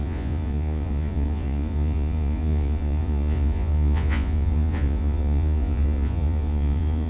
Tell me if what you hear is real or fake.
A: fake